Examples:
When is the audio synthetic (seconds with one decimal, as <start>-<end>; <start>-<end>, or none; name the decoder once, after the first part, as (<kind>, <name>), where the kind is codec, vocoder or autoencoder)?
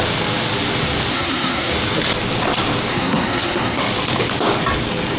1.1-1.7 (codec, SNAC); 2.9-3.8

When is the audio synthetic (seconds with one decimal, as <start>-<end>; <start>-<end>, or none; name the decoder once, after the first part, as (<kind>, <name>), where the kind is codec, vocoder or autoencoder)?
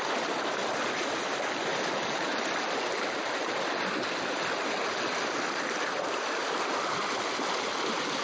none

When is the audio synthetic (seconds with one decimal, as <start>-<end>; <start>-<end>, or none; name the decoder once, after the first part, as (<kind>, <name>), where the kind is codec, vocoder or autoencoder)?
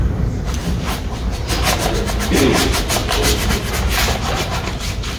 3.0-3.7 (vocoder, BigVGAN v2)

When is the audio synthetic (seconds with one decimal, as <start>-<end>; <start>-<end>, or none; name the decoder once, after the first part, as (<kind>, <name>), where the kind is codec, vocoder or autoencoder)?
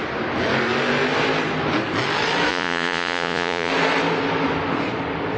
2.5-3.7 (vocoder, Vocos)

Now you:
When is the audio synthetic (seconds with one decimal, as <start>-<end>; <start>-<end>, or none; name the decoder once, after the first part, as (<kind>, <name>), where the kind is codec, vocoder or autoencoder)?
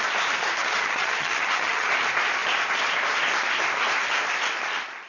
0.6-1.9 (vocoder, HiFi-GAN)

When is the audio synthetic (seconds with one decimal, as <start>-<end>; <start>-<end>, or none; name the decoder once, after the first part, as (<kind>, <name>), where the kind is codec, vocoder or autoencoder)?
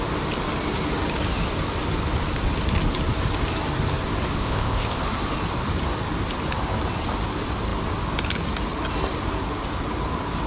4.4-5.0 (codec, ZipCodec)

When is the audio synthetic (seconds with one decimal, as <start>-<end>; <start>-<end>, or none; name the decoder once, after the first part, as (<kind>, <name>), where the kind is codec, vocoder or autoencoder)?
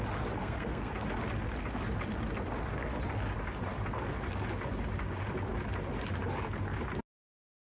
0.4-0.9 (codec, SNAC)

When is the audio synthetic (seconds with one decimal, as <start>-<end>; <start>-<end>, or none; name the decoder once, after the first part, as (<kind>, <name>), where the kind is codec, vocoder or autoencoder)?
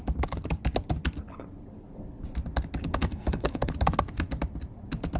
2.9-3.7 (codec, SNAC)